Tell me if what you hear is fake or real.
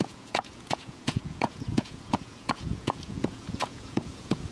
fake